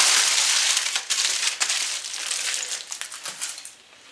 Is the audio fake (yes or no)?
yes